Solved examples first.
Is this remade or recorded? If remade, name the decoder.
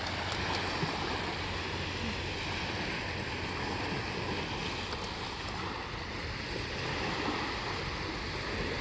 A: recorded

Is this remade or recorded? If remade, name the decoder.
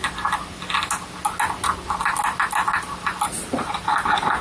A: recorded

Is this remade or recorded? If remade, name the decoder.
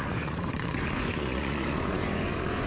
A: remade, vocoder, Vocos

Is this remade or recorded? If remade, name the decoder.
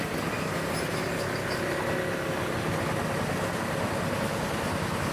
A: recorded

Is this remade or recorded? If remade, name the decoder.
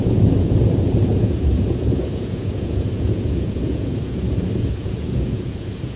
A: remade, vocoder, Vocos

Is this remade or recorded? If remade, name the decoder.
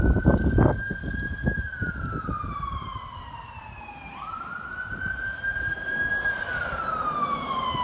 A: recorded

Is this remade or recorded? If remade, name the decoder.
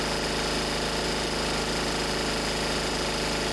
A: recorded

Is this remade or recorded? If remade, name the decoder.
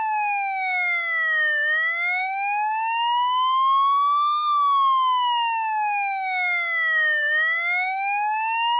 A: recorded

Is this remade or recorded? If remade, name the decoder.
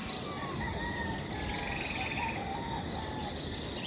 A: recorded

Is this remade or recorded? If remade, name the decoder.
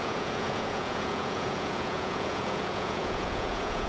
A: remade, vocoder, Vocos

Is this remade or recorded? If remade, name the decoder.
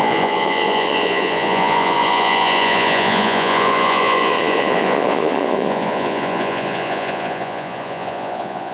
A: remade, vocoder, Vocos